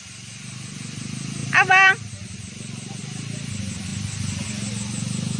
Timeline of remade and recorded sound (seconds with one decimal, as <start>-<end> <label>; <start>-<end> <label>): 0.0-3.0 recorded; 3.0-3.5 remade; 3.5-5.4 recorded